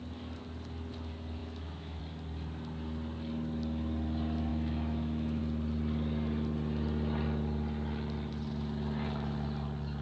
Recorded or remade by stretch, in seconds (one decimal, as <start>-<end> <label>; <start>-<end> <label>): 0.0-1.4 recorded; 1.4-2.0 remade; 2.0-4.5 recorded; 4.5-5.4 remade; 5.4-10.0 recorded